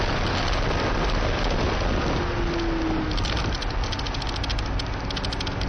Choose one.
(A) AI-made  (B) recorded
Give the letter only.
B